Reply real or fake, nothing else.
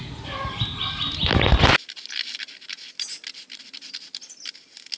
real